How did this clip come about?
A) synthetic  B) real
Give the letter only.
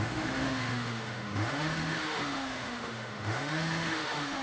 A